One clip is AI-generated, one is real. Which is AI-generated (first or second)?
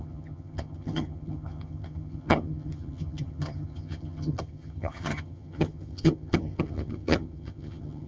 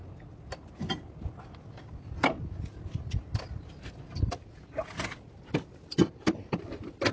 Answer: first